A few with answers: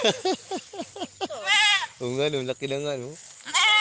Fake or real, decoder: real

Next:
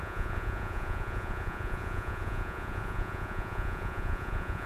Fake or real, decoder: fake, vocoder, Vocos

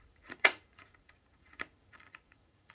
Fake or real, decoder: fake, vocoder, Vocos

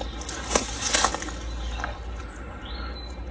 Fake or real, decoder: real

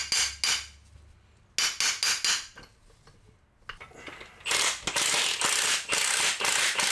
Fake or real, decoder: real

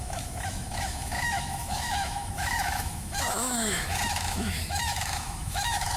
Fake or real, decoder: fake, autoencoder, DAC-VAE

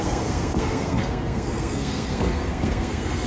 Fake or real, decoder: fake, codec, SNAC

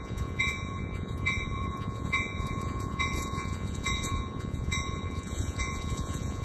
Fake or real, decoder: fake, vocoder, Vocos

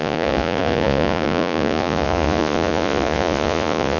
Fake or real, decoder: fake, vocoder, Vocos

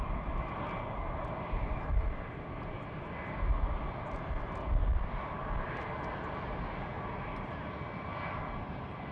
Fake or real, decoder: real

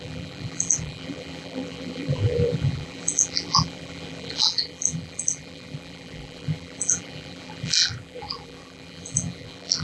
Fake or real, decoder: fake, vocoder, BigVGAN v2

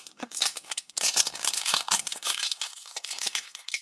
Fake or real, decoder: fake, codec, SNAC